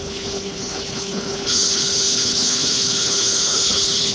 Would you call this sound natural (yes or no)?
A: no